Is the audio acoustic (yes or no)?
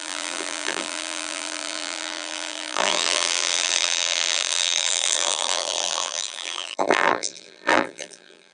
no